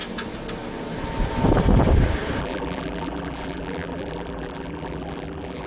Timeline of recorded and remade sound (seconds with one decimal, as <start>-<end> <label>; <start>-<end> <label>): 0.0-2.4 recorded; 2.4-5.7 remade